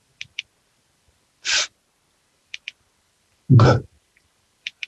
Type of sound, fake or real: fake